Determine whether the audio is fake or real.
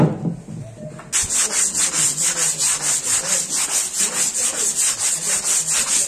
real